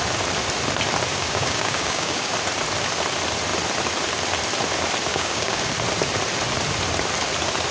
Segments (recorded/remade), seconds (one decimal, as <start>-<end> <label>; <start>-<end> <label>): 0.0-1.1 recorded; 1.1-2.3 remade; 2.3-5.1 recorded; 5.1-5.7 remade; 5.7-7.7 recorded